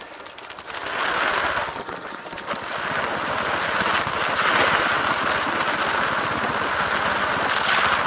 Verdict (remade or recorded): recorded